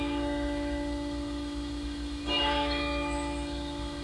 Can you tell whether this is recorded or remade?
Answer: remade